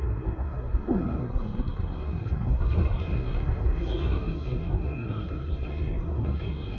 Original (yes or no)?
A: no